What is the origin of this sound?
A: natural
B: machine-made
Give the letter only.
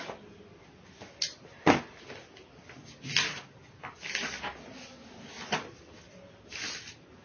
A